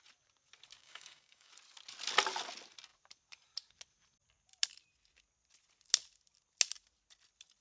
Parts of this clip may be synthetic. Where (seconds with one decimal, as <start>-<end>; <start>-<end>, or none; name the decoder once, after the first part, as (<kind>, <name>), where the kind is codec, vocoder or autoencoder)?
0.8-1.5 (codec, DAC)